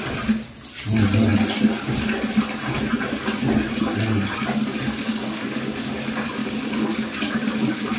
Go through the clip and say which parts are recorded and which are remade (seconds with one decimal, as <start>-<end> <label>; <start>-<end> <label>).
0.0-5.0 recorded; 5.0-5.9 remade; 5.9-6.4 recorded; 6.4-8.0 remade